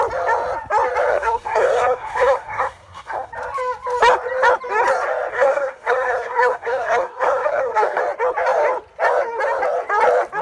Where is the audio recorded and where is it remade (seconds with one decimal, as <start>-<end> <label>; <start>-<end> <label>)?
0.0-1.1 recorded; 1.1-3.3 remade; 3.3-5.3 recorded; 5.3-8.0 remade; 8.0-10.4 recorded